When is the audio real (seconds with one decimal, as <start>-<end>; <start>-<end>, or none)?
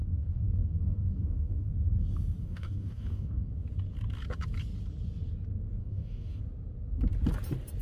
1.7-2.4; 3.5-5.8; 6.4-7.8